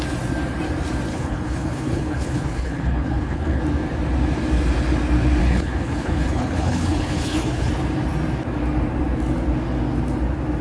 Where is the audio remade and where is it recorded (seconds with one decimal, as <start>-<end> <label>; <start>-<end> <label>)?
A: 0.0-1.1 recorded; 1.1-3.6 remade; 3.6-5.4 recorded; 5.4-7.7 remade; 7.7-10.6 recorded